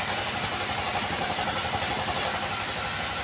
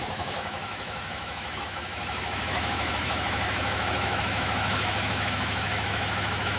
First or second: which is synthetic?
second